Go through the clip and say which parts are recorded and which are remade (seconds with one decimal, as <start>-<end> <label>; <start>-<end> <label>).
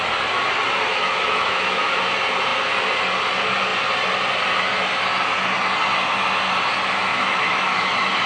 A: 0.0-0.9 recorded; 0.9-2.0 remade; 2.0-7.1 recorded; 7.1-7.9 remade; 7.9-8.3 recorded